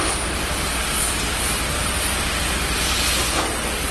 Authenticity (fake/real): real